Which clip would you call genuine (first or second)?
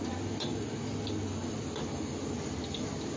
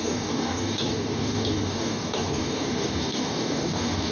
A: first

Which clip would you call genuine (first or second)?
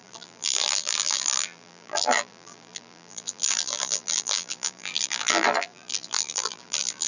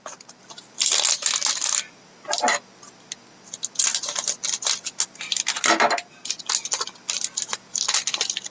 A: second